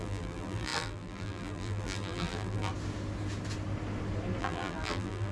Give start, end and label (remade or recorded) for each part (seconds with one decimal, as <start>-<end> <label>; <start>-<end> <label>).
0.0-2.7 remade; 2.7-4.4 recorded; 4.4-5.3 remade